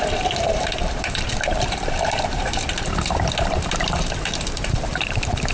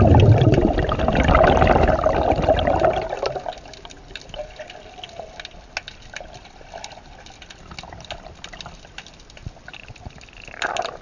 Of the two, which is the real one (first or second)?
second